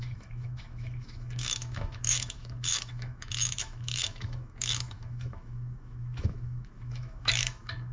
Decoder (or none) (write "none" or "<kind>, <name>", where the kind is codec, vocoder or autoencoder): autoencoder, DAC-VAE